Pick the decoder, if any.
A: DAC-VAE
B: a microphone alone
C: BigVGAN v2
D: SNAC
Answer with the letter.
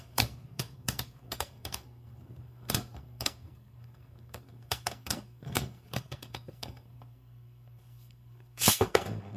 D